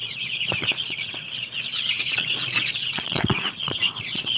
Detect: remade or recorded remade